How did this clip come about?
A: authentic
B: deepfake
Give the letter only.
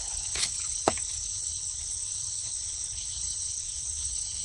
B